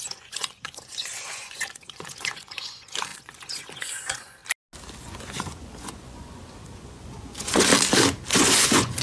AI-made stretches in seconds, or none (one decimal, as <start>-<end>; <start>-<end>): 0.0-4.4; 5.0-7.7; 8.3-9.0

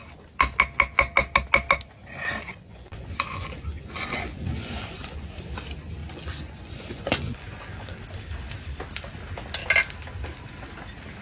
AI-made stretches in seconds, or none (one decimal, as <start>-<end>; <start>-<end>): 2.0-5.3; 6.0-8.0

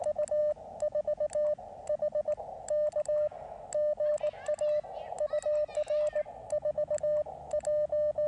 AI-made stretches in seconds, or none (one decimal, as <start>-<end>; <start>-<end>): none